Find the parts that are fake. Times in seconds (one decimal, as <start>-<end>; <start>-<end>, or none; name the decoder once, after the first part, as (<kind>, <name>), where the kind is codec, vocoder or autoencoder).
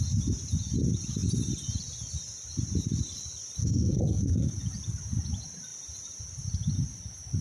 3.6-4.5 (codec, SNAC)